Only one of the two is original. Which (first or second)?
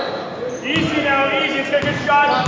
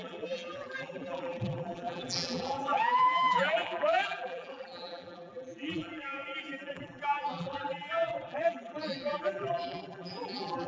first